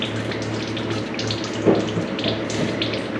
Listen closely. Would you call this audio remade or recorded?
recorded